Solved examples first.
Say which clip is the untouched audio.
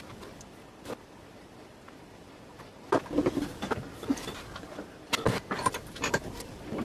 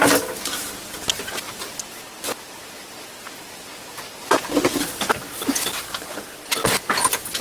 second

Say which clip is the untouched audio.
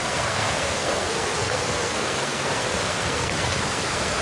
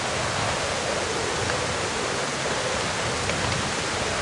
second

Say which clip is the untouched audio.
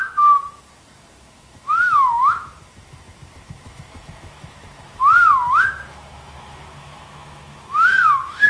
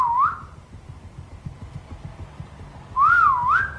second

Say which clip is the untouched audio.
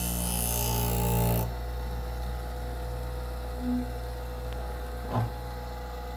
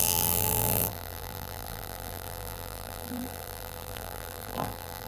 first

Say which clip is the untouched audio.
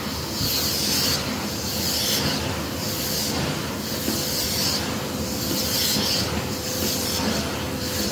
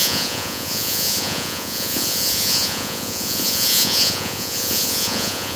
first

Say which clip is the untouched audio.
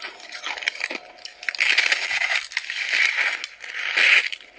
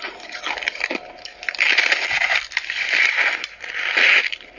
first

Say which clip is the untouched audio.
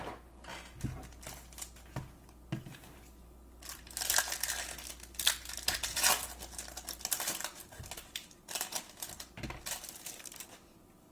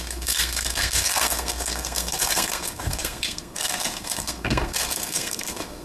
first